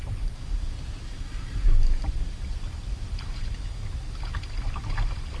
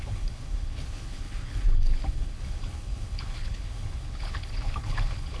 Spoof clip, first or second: second